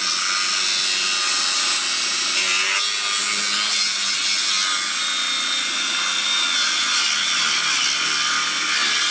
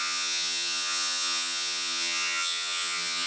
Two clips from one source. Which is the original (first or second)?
first